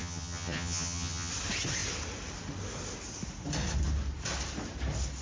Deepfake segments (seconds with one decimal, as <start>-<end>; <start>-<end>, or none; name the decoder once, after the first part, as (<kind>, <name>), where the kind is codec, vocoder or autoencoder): 0.0-1.3 (vocoder, HiFi-GAN)